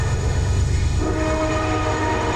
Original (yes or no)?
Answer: no